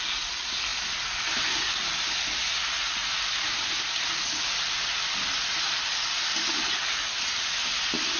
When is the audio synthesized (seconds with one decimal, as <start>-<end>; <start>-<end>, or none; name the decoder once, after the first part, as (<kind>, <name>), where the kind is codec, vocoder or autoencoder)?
none